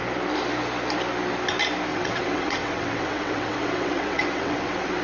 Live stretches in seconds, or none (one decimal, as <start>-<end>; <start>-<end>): 0.0-1.9